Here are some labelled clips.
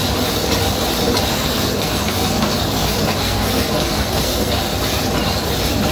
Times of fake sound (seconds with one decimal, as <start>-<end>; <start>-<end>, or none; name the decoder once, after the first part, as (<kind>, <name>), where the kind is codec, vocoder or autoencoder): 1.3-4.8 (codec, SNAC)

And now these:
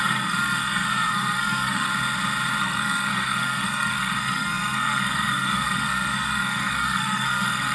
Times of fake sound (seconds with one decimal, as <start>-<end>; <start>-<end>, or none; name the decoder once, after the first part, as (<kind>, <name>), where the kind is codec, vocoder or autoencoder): 0.0-1.9 (codec, SNAC); 2.6-7.7

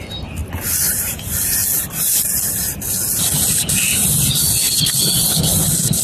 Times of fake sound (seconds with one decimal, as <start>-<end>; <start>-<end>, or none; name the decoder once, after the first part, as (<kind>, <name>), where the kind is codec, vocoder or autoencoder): none

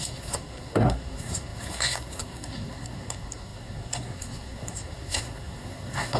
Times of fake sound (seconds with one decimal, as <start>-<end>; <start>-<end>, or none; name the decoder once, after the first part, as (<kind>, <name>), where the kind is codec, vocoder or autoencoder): 0.0-6.2 (codec, SNAC)

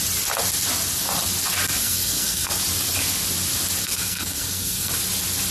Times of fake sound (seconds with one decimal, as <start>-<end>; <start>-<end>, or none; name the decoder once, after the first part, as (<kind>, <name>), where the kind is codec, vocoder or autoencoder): 1.8-2.6 (codec, SNAC); 3.8-4.9

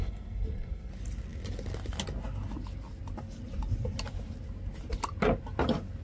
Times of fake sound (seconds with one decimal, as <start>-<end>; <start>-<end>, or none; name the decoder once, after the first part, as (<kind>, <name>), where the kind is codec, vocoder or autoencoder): 0.0-0.9 (codec, SNAC)